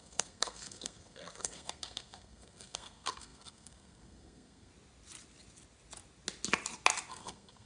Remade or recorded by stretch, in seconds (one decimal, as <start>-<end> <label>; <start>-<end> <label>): 0.0-4.7 remade; 4.7-7.1 recorded; 7.1-7.7 remade